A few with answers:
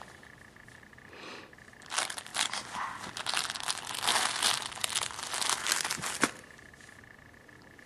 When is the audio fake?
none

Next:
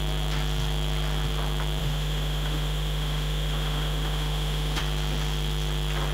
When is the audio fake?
1.8-4.8

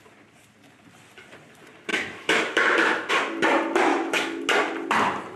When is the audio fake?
1.9-3.1; 3.9-4.4

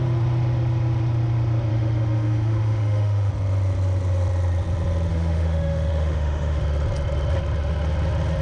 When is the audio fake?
1.7-3.3; 5.1-6.6

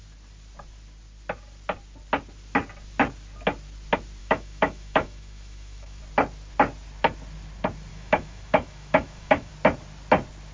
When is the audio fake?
4.2-6.0; 7.9-9.5

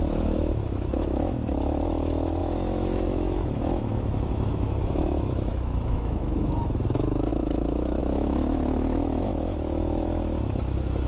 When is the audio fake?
0.0-11.1